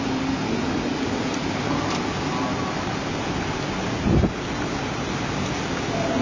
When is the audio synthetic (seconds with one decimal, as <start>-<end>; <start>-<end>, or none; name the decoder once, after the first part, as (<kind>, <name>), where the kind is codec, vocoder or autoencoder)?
none